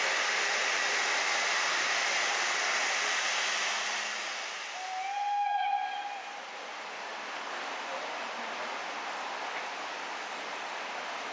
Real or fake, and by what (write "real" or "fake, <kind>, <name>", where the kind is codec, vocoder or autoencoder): real